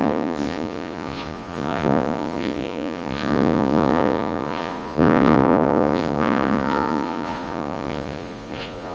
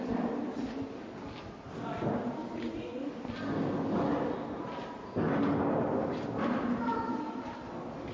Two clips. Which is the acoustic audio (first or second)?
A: second